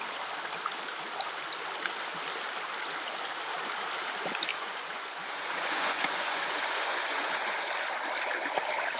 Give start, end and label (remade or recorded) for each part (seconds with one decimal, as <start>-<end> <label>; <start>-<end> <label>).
0.0-4.5 recorded; 4.5-7.7 remade; 7.7-9.0 recorded